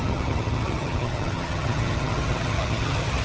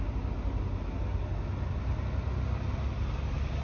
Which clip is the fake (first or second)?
first